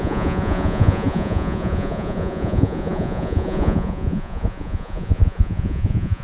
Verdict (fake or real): fake